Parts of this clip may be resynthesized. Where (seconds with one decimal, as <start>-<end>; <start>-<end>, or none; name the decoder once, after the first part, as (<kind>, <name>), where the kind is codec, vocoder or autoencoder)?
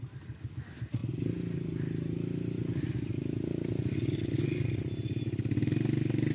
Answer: none